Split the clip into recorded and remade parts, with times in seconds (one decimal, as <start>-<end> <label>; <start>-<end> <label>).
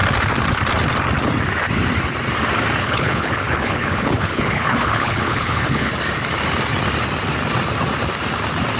0.0-2.8 recorded; 2.8-5.9 remade; 5.9-8.8 recorded